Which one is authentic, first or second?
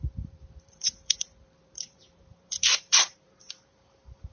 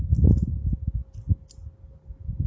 second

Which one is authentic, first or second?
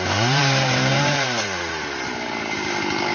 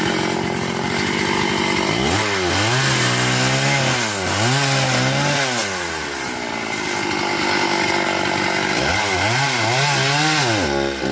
second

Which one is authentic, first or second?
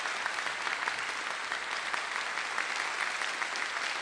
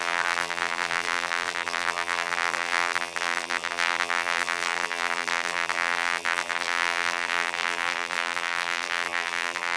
first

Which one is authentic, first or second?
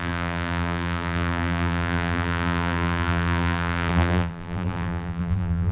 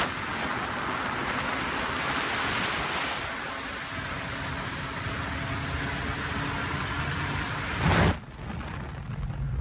second